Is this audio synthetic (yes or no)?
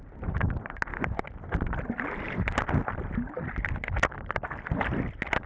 no